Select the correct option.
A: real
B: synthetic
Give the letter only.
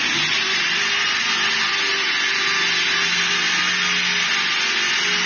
A